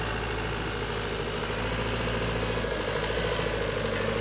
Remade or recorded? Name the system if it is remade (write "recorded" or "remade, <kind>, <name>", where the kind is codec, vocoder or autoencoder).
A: recorded